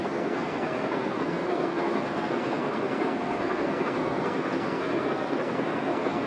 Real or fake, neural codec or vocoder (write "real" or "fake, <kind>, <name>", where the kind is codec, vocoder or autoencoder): fake, codec, SNAC